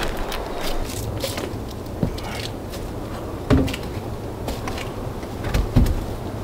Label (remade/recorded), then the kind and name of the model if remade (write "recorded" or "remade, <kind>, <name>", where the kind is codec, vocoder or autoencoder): recorded